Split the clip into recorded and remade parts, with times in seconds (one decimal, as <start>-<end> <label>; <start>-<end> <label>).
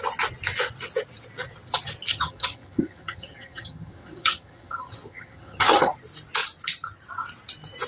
0.0-2.1 recorded; 2.1-5.9 remade; 5.9-7.9 recorded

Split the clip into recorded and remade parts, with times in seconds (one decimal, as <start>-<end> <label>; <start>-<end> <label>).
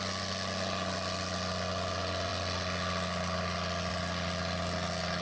0.0-5.2 recorded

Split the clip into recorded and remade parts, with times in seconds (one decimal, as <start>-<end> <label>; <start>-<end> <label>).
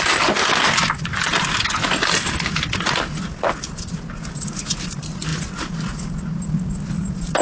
0.0-7.4 recorded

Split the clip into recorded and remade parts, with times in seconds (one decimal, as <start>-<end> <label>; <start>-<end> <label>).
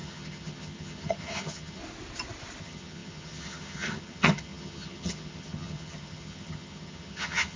0.0-1.8 remade; 1.8-2.6 recorded; 2.6-7.6 remade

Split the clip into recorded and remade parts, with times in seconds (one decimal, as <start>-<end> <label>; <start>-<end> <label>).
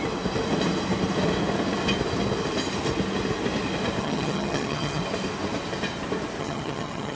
0.0-4.0 recorded; 4.0-5.0 remade; 5.0-6.4 recorded; 6.4-7.2 remade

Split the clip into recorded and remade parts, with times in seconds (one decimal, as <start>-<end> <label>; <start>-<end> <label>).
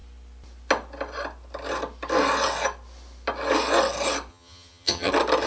0.0-4.3 recorded; 4.3-5.1 remade; 5.1-5.5 recorded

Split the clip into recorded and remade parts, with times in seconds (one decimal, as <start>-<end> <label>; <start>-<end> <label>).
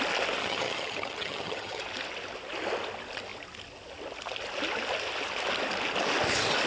0.0-0.4 recorded; 0.4-1.8 remade; 1.8-6.7 recorded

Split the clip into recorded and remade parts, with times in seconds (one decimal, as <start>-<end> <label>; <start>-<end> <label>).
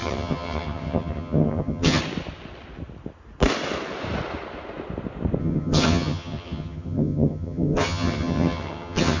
0.0-2.0 remade; 2.0-5.4 recorded; 5.4-9.2 remade